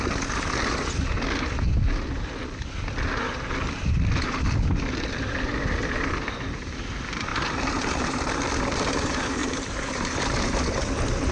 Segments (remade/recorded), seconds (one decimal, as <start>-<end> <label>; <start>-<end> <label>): 0.0-7.3 recorded; 7.3-8.2 remade; 8.2-9.4 recorded; 9.4-10.6 remade; 10.6-11.3 recorded